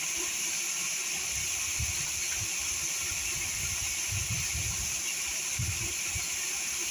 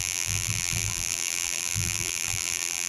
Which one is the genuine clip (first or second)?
first